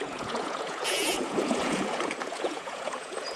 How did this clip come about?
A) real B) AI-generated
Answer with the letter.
B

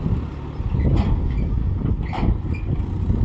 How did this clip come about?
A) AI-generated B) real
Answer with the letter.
B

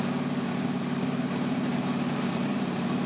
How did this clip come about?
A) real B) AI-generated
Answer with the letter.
A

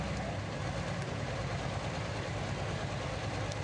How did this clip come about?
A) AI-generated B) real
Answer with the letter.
B